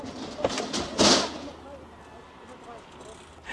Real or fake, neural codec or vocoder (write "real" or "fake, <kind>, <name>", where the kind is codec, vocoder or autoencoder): real